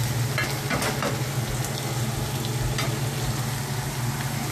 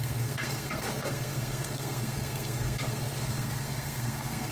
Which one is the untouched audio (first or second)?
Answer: first